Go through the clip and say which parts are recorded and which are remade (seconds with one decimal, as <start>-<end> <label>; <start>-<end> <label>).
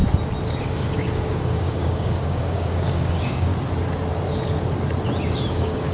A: 0.0-0.6 recorded; 0.6-3.5 remade; 3.5-5.5 recorded; 5.5-5.9 remade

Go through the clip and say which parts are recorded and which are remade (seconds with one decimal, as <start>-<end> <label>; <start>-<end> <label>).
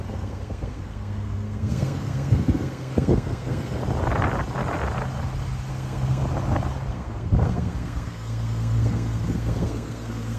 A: 0.0-3.8 remade; 3.8-5.7 recorded; 5.7-6.2 remade; 6.2-6.9 recorded; 6.9-10.4 remade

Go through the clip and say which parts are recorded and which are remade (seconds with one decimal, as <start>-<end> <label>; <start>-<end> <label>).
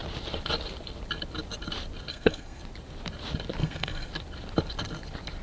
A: 0.0-2.1 recorded; 2.1-2.6 remade; 2.6-3.6 recorded; 3.6-4.1 remade; 4.1-5.4 recorded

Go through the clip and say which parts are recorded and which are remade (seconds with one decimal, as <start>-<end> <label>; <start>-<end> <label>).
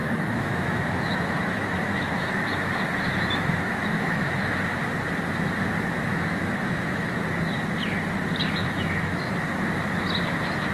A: 0.0-4.5 remade; 4.5-6.1 recorded; 6.1-7.2 remade; 7.2-8.6 recorded; 8.6-9.3 remade; 9.3-10.7 recorded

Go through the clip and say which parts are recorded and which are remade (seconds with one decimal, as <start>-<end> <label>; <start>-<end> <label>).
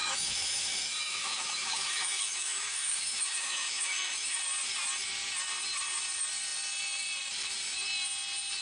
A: 0.0-4.4 remade; 4.4-8.6 recorded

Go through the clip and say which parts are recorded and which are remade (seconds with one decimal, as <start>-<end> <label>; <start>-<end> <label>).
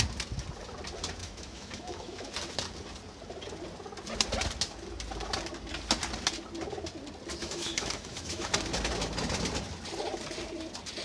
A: 0.0-1.2 recorded; 1.2-2.3 remade; 2.3-7.4 recorded; 7.4-8.5 remade; 8.5-11.0 recorded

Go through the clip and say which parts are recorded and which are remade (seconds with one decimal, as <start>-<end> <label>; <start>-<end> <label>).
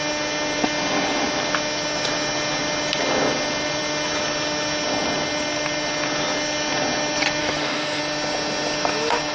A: 0.0-7.4 recorded; 7.4-8.0 remade; 8.0-9.3 recorded